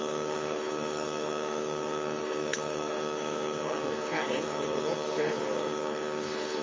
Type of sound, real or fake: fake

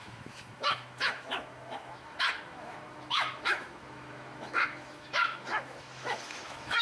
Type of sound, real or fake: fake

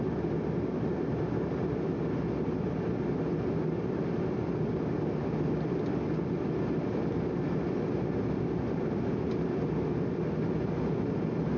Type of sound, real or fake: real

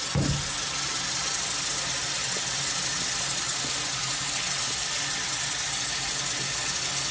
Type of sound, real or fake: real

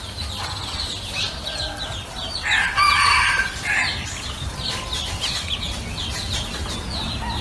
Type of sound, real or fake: real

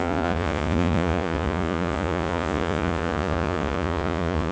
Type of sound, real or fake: fake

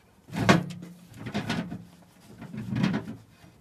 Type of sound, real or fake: real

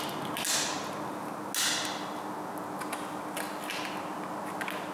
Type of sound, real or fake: real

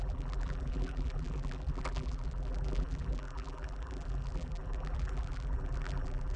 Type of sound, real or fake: fake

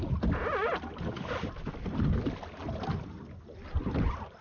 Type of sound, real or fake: real